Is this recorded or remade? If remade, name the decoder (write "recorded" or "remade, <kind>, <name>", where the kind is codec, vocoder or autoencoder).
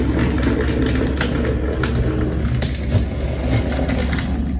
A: recorded